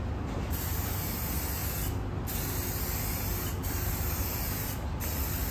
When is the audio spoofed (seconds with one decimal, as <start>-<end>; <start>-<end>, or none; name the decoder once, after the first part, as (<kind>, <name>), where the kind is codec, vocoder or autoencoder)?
none

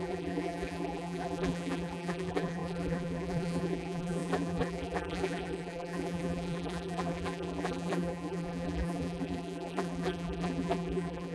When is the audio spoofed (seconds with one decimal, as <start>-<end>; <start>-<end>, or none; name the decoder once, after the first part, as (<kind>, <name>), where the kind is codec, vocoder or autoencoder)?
0.0-11.3 (vocoder, BigVGAN v2)

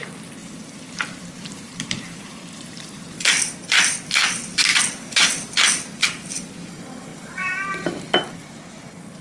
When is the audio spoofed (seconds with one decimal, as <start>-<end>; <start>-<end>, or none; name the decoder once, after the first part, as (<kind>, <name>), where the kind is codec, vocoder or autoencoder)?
0.4-3.0 (vocoder, BigVGAN v2); 7.1-8.0

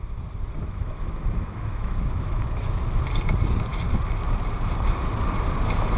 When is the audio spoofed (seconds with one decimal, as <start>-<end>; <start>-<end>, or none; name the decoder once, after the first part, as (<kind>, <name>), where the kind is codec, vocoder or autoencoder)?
0.6-2.8 (autoencoder, DAC-VAE)